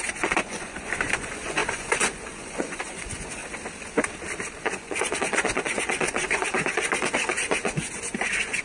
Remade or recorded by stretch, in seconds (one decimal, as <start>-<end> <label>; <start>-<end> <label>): 0.0-3.4 remade; 3.4-4.6 recorded; 4.6-8.6 remade